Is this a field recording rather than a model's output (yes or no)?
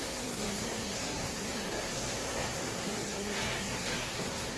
no